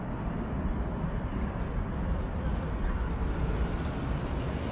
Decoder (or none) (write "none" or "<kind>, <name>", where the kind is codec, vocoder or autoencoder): none